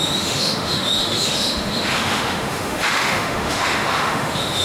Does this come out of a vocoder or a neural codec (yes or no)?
yes